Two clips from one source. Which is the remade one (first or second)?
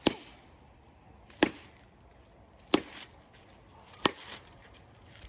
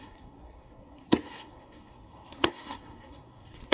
second